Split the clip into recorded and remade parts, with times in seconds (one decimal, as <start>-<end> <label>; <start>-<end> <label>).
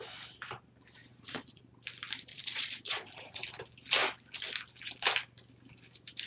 0.0-1.1 recorded; 1.1-1.6 remade; 1.6-2.3 recorded; 2.3-3.4 remade; 3.4-6.3 recorded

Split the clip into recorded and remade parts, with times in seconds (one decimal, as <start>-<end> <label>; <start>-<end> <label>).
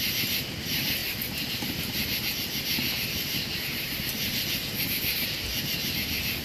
0.0-6.4 recorded